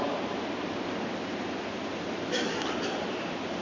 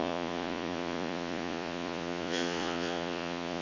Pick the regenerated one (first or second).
second